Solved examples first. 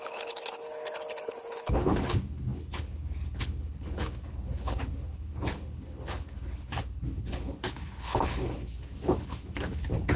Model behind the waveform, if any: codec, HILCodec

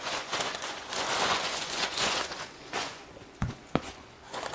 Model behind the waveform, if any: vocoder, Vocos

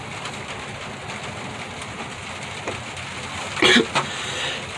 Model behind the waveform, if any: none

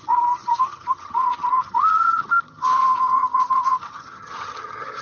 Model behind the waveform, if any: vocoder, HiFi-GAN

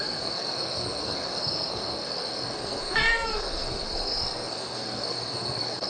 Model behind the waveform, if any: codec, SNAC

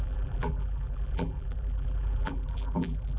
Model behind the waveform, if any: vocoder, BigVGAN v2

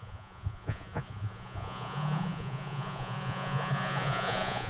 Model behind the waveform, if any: vocoder, Vocos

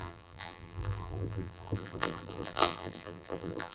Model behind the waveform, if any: vocoder, BigVGAN v2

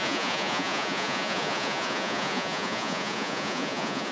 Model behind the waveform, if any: vocoder, Vocos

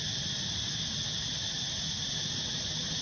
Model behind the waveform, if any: none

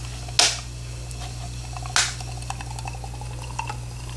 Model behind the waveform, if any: none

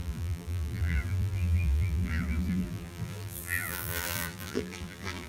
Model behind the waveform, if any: vocoder, BigVGAN v2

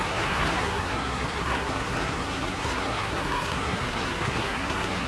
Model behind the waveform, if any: codec, SNAC